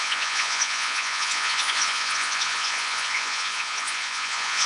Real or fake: fake